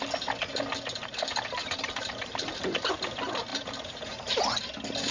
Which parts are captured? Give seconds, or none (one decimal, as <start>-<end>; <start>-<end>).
0.0-1.6; 2.9-3.5; 4.4-5.1